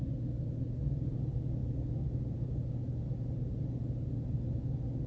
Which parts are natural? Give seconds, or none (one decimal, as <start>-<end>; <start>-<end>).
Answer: 0.0-5.1